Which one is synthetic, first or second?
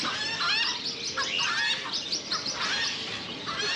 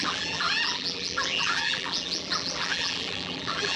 second